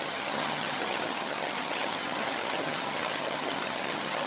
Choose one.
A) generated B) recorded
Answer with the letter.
A